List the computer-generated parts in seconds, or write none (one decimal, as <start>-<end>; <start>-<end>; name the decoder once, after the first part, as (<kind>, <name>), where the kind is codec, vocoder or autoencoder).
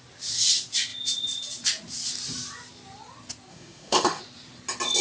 3.5-4.2 (autoencoder, DAC-VAE)